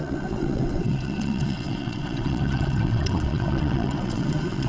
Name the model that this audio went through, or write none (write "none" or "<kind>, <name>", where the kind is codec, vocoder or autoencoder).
vocoder, WaveNeXt